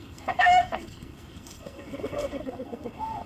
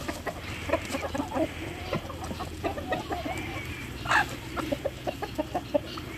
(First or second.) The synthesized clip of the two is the first